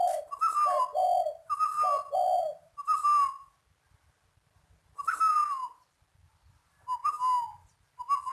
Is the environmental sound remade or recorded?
recorded